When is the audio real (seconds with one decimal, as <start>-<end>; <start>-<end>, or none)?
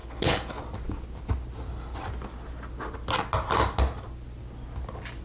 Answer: 0.6-5.2